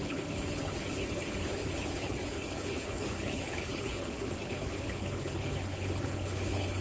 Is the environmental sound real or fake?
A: fake